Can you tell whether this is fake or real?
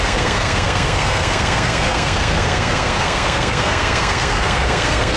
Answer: fake